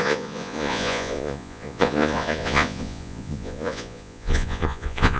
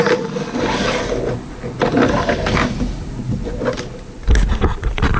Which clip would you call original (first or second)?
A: second